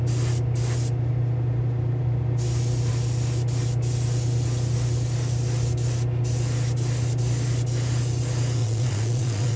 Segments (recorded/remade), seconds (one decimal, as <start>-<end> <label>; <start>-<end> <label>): 0.0-8.6 recorded; 8.6-9.6 remade